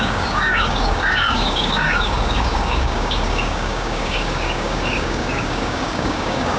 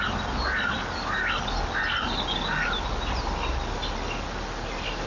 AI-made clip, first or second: first